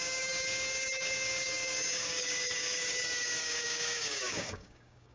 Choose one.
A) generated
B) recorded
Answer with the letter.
A